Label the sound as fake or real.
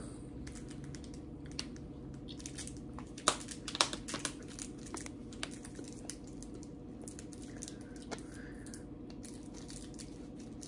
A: real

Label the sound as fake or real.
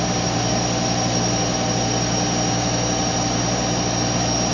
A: real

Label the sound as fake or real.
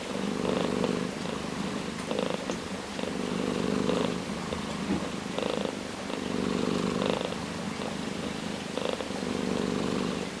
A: real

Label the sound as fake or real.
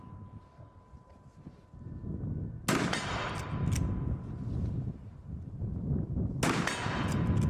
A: real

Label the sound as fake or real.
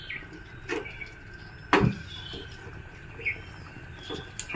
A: real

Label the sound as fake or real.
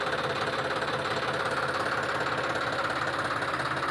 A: real